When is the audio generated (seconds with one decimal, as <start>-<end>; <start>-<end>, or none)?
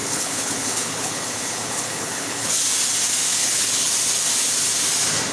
0.0-2.6; 3.3-3.9